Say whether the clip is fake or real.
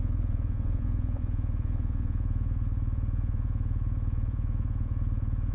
fake